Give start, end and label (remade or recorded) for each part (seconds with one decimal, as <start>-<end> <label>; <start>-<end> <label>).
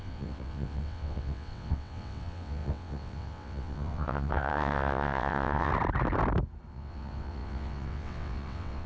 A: 0.0-5.7 remade; 5.7-6.7 recorded; 6.7-8.9 remade